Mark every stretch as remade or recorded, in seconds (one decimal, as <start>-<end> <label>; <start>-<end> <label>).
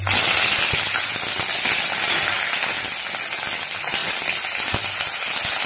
0.0-5.7 recorded